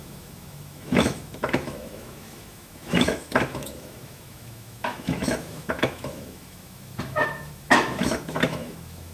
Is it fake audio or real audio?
fake